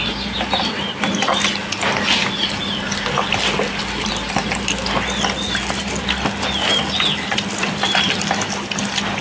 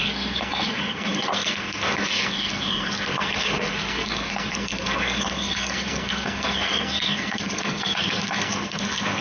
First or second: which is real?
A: first